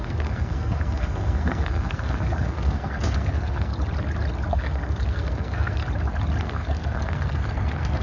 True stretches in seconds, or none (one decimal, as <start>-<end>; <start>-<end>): 3.7-4.5; 5.8-6.4